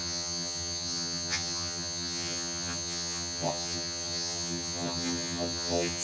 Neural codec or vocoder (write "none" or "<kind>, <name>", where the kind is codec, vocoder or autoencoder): vocoder, HiFi-GAN